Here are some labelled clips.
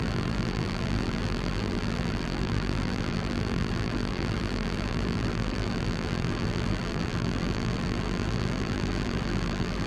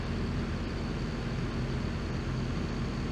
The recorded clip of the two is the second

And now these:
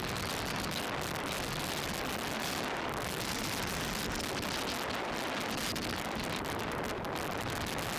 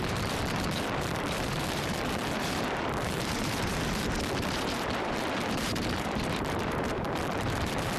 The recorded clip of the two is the first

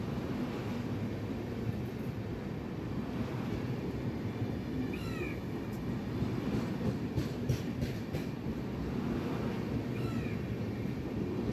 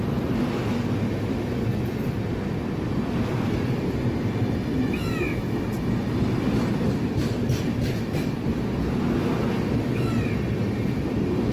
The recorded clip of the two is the second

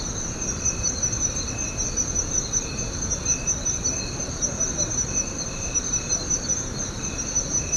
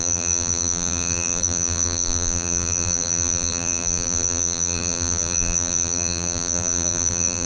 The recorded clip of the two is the first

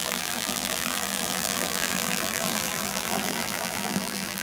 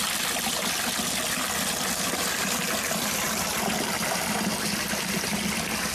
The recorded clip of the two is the second